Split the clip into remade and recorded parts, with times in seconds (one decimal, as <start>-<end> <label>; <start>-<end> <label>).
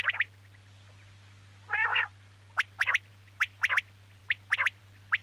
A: 0.0-5.2 recorded